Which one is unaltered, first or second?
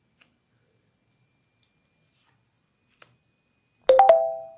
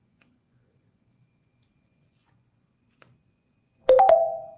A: first